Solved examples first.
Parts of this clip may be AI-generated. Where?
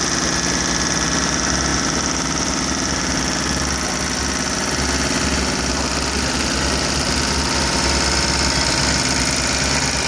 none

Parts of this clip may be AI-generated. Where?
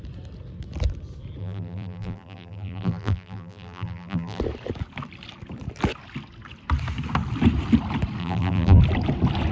1.4-4.4 (vocoder, BigVGAN v2); 8.2-8.8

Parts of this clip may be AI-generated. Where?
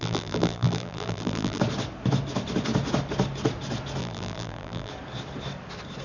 0.0-1.6 (vocoder, BigVGAN v2); 4.0-4.9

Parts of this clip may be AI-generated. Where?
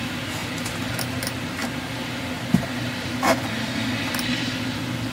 none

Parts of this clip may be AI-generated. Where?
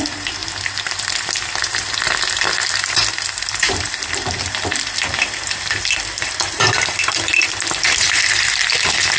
0.0-0.4 (vocoder, BigVGAN v2); 1.6-9.2